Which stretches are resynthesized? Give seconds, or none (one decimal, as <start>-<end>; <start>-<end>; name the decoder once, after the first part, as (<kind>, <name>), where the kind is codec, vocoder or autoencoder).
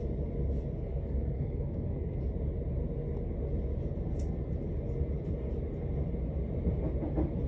0.8-2.2 (codec, SNAC)